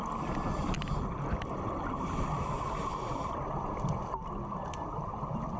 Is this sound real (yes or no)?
no